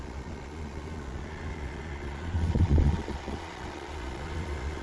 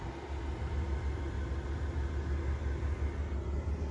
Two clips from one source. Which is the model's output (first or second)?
first